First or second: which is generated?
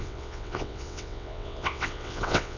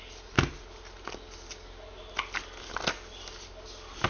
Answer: first